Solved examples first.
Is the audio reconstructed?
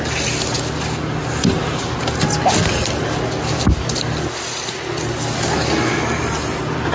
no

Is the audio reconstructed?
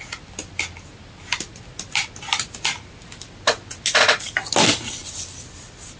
no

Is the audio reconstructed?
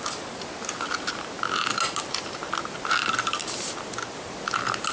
no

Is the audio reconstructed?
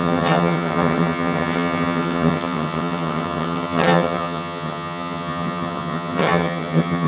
yes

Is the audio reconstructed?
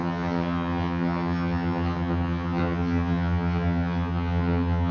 yes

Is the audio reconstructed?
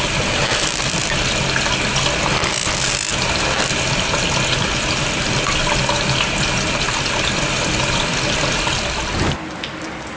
no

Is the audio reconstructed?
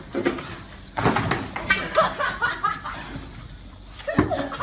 no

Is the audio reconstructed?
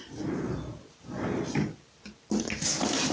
no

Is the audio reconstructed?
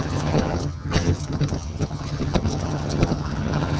yes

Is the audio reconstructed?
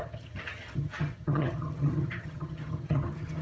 yes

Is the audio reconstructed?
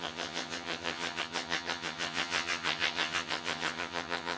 yes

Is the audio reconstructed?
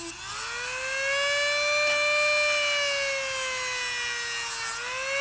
no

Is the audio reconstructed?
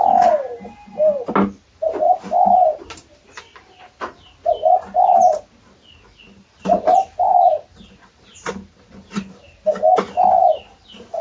no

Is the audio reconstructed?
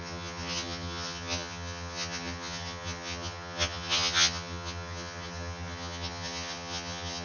yes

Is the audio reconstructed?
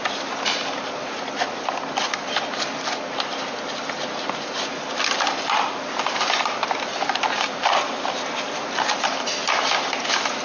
no